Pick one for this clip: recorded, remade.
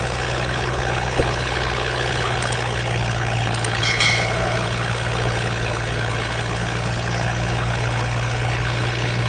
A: remade